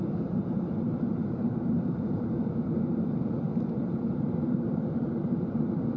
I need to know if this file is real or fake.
fake